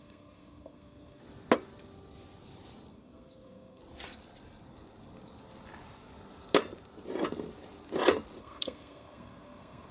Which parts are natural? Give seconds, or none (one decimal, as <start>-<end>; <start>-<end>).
1.2-2.9; 3.8-8.4